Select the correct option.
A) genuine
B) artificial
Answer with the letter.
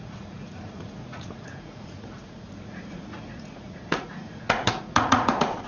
B